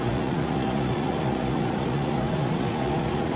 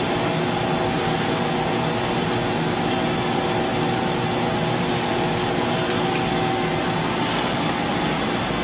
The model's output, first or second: first